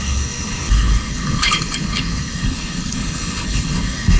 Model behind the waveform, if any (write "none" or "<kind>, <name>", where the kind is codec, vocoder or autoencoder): codec, HILCodec